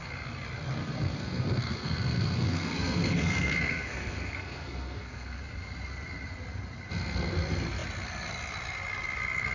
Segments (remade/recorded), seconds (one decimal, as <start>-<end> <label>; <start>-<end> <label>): 0.0-0.8 recorded; 0.8-5.4 remade; 5.4-9.5 recorded

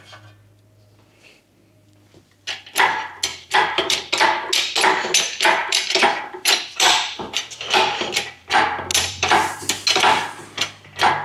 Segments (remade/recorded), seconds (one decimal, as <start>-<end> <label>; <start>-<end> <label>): 0.0-3.3 recorded; 3.3-4.1 remade; 4.1-5.6 recorded; 5.6-7.4 remade; 7.4-8.9 recorded; 8.9-9.6 remade; 9.6-11.2 recorded